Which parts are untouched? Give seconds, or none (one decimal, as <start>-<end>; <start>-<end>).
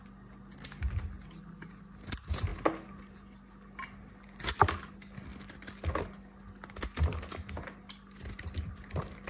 0.0-9.3